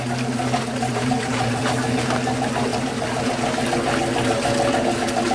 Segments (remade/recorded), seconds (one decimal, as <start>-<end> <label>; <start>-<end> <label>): 0.0-0.9 recorded; 0.9-1.6 remade; 1.6-2.7 recorded; 2.7-3.3 remade; 3.3-5.3 recorded